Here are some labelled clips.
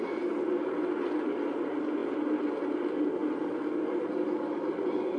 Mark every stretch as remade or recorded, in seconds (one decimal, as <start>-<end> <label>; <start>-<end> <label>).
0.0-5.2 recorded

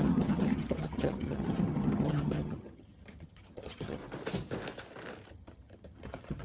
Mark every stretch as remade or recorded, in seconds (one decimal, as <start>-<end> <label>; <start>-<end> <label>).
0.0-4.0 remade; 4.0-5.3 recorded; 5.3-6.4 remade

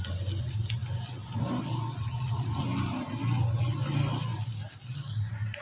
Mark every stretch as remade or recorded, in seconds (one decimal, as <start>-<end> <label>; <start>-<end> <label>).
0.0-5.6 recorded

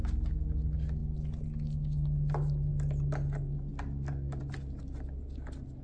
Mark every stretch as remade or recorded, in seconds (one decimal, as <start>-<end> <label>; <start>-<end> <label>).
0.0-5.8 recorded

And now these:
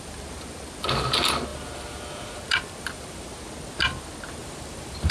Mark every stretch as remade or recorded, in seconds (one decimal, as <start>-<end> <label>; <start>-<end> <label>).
0.0-1.5 recorded; 1.5-3.3 remade; 3.3-4.4 recorded; 4.4-5.1 remade

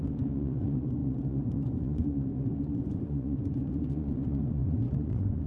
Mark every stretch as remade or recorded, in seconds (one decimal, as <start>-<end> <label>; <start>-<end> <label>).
0.0-5.5 remade